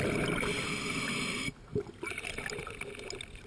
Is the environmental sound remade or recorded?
recorded